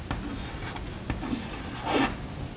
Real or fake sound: real